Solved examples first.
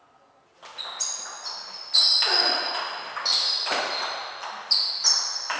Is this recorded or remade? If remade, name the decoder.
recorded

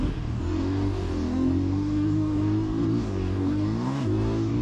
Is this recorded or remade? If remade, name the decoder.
remade, codec, DAC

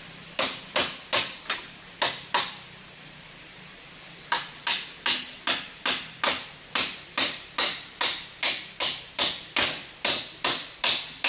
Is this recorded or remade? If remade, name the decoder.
recorded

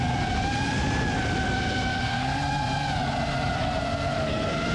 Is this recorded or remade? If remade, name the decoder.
recorded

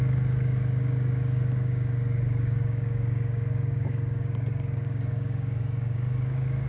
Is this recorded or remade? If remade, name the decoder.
remade, codec, DAC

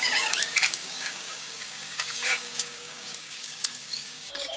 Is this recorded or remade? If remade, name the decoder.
remade, codec, DAC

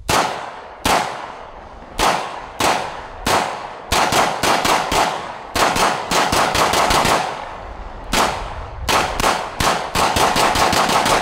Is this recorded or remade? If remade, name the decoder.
remade, codec, DAC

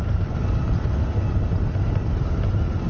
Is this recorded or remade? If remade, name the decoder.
recorded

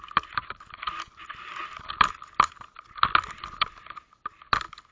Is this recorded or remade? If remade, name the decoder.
recorded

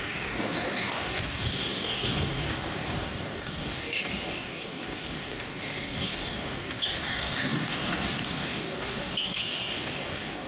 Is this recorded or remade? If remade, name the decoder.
remade, codec, DAC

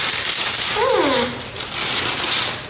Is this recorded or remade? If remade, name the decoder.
recorded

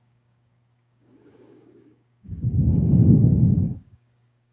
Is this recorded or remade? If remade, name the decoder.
remade, codec, DAC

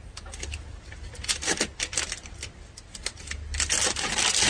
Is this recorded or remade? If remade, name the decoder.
recorded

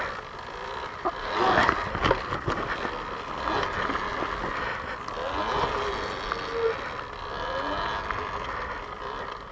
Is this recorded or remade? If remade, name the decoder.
recorded